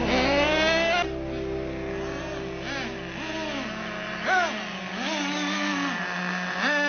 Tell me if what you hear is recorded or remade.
recorded